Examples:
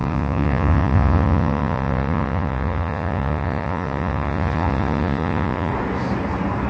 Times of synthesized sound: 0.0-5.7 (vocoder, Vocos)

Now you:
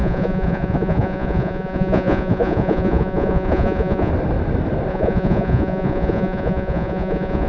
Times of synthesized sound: 0.0-4.1 (vocoder, Vocos); 4.9-7.5

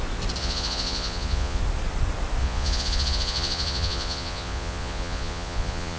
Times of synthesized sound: 0.4-1.6 (vocoder, Vocos); 2.4-6.0

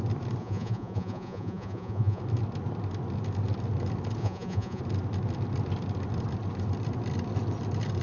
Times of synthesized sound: 0.4-2.2 (vocoder, Vocos); 4.2-4.8